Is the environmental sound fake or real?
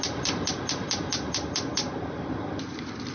real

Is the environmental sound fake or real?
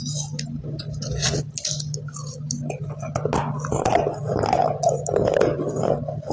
real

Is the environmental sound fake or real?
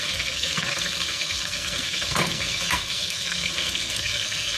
fake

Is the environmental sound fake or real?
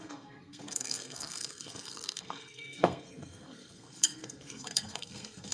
fake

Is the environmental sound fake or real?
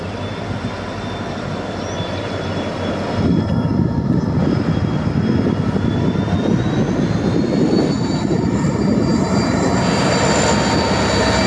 real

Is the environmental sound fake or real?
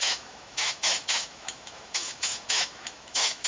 fake